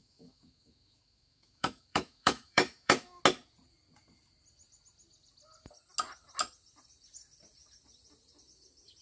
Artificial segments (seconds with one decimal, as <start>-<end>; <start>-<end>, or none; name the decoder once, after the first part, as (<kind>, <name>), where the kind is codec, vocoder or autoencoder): 0.0-3.2 (autoencoder, DAC-VAE)